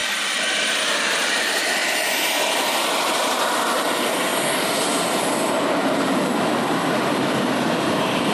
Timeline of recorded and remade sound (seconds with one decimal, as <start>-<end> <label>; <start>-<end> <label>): 0.0-1.8 remade; 1.8-2.5 recorded; 2.5-4.3 remade; 4.3-5.8 recorded; 5.8-8.3 remade